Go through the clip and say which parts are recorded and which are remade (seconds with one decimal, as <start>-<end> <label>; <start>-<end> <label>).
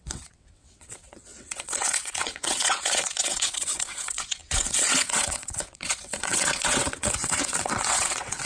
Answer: 0.0-8.5 remade